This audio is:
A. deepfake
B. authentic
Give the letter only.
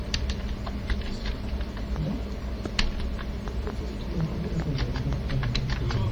A